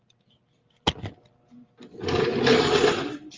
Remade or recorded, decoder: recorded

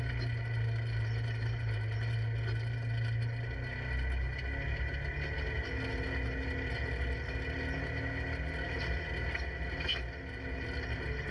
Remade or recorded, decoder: recorded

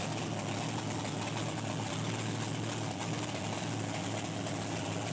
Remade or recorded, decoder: recorded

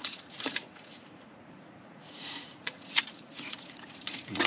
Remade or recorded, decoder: remade, vocoder, Vocos